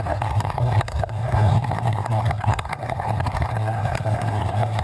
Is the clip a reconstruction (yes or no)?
yes